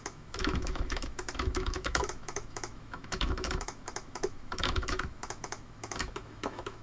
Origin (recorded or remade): remade